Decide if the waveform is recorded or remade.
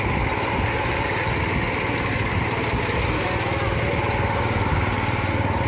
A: recorded